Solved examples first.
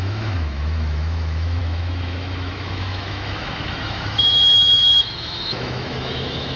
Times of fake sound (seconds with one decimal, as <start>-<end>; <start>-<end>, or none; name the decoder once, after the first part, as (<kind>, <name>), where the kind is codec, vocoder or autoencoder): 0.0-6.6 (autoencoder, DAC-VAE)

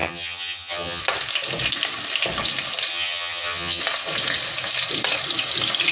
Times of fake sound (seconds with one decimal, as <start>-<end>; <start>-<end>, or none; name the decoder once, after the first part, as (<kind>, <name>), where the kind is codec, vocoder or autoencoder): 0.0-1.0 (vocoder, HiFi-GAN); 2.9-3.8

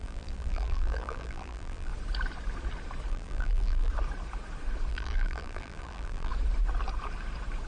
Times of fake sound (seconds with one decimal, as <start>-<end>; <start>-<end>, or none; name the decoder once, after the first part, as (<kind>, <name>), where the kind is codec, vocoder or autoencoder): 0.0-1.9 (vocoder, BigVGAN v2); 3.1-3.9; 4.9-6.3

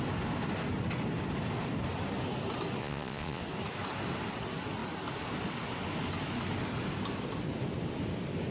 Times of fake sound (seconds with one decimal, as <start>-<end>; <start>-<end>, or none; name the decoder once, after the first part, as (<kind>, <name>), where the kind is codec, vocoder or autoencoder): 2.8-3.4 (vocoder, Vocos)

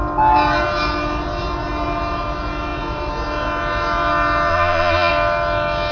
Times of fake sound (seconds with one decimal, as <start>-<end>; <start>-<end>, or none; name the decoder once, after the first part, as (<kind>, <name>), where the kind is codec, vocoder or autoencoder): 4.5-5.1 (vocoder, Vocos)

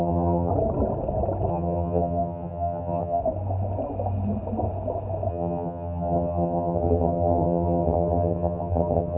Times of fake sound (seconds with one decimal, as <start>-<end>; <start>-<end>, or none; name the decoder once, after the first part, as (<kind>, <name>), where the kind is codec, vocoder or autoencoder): 0.0-0.5 (vocoder, HiFi-GAN); 1.5-3.2; 5.3-9.2